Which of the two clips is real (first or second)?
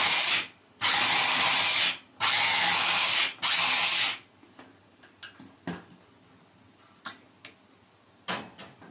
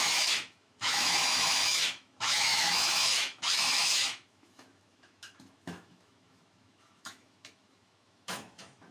first